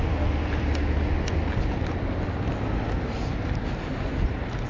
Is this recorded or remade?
recorded